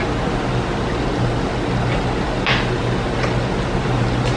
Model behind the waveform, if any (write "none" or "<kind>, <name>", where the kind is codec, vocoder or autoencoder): none